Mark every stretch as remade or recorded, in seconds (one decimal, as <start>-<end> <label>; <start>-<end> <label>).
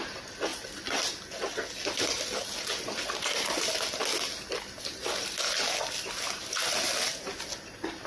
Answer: 0.0-8.1 recorded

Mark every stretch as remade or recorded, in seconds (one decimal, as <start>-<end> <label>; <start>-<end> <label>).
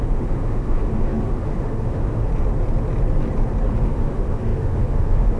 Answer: 0.0-2.3 remade; 2.3-3.8 recorded; 3.8-5.4 remade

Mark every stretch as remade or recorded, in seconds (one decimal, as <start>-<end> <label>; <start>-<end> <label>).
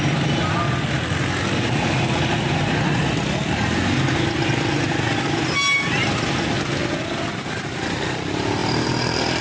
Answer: 0.0-8.6 recorded; 8.6-9.4 remade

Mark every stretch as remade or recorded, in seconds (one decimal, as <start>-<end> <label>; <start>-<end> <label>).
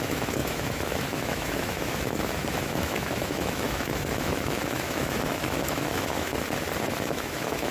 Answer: 0.0-6.3 remade; 6.3-7.0 recorded; 7.0-7.7 remade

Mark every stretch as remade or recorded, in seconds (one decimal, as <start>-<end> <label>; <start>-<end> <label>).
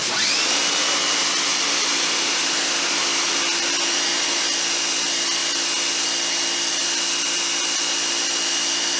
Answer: 0.0-9.0 recorded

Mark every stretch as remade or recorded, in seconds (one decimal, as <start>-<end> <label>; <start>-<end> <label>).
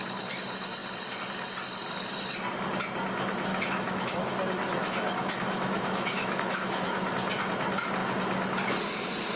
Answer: 0.0-3.5 recorded; 3.5-4.2 remade; 4.2-4.8 recorded; 4.8-7.1 remade; 7.1-9.4 recorded